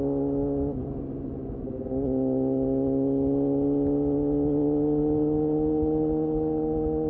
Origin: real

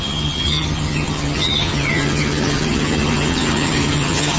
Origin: fake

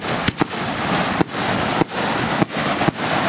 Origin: real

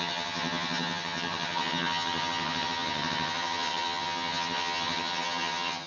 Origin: fake